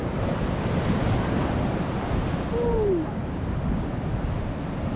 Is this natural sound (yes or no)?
yes